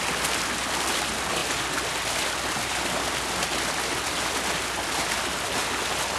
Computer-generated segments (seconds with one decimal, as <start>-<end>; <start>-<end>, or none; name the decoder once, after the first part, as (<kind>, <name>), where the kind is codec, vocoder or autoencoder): none